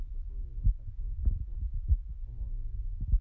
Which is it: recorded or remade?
recorded